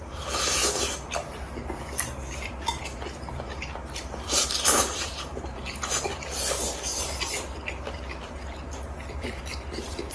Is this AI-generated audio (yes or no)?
yes